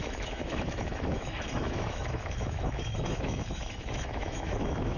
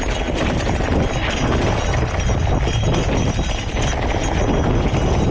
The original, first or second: second